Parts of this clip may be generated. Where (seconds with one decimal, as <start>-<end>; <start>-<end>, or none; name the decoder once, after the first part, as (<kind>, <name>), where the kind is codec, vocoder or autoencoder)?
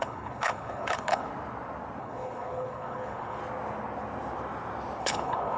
0.0-1.3 (codec, HILCodec); 2.0-3.4; 5.0-5.6